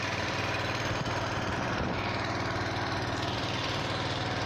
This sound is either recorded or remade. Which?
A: remade